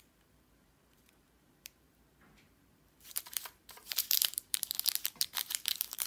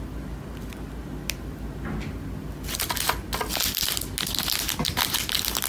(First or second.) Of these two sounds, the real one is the second